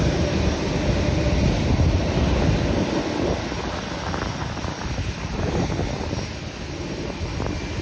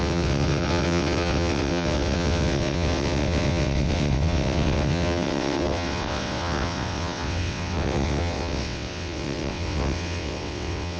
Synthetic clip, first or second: second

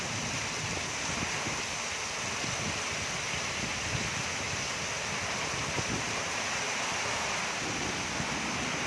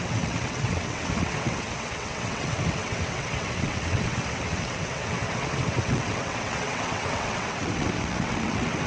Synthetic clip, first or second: second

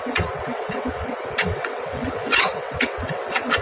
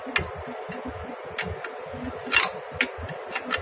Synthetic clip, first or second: first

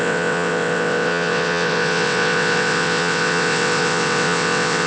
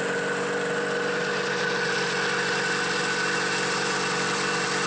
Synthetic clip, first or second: first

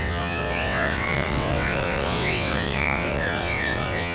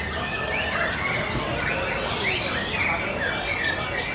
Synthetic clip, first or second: first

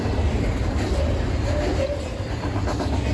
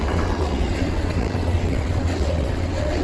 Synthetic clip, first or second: second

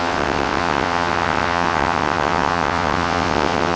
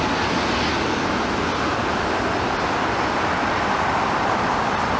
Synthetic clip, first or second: first